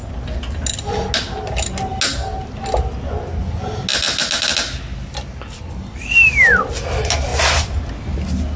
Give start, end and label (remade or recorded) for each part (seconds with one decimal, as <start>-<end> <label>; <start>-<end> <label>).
0.0-7.3 recorded; 7.3-7.9 remade; 7.9-8.6 recorded